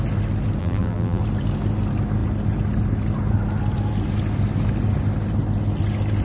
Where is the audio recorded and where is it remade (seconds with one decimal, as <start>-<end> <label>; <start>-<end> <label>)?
0.0-0.6 recorded; 0.6-1.2 remade; 1.2-6.2 recorded